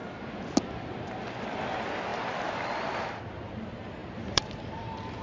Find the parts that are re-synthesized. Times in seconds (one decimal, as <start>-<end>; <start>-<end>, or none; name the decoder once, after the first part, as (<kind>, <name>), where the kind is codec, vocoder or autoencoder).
2.1-3.3 (vocoder, BigVGAN v2); 4.0-4.5